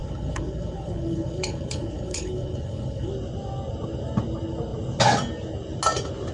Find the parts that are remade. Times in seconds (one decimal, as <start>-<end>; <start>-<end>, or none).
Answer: 0.0-3.1